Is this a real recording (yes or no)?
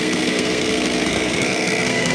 no